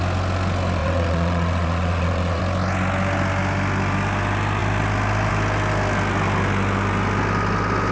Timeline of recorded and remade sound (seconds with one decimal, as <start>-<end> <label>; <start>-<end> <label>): 0.0-0.8 recorded; 0.8-2.4 remade; 2.4-7.9 recorded